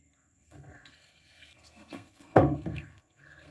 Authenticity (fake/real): fake